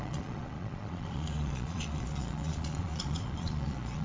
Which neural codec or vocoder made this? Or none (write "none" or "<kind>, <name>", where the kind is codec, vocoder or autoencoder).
vocoder, Vocos